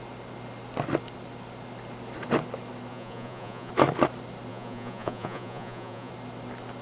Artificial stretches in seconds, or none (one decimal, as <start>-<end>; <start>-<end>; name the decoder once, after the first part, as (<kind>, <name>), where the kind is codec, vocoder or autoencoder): 2.9-3.7 (vocoder, Vocos); 4.5-6.1